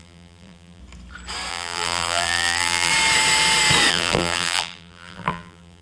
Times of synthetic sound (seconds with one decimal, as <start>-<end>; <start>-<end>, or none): 0.0-0.8; 1.5-2.9; 3.9-5.8